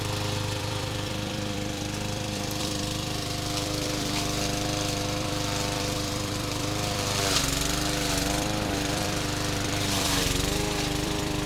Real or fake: fake